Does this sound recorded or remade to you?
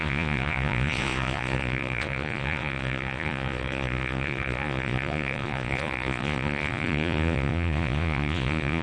remade